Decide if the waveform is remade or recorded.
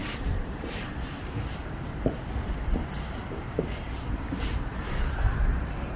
remade